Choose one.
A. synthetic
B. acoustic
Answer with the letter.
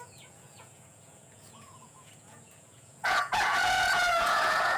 A